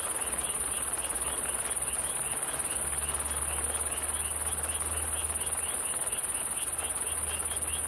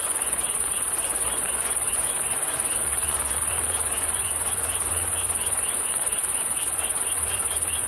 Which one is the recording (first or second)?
first